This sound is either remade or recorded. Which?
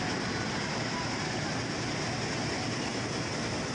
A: recorded